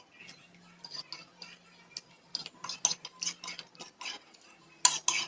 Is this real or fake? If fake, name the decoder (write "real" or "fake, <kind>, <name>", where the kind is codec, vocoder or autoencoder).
real